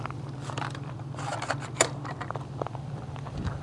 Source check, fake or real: fake